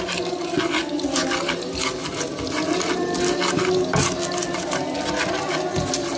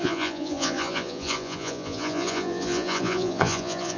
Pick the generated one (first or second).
second